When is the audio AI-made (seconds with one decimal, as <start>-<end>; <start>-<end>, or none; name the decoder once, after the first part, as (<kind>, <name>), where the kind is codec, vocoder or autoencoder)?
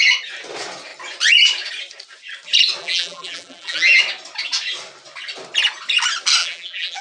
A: 2.8-4.0 (vocoder, BigVGAN v2); 6.4-7.0